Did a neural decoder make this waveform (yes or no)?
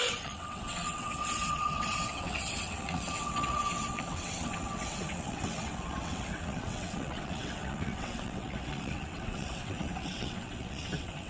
yes